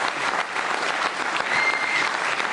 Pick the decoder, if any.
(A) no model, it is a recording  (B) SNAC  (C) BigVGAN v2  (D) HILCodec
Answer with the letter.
A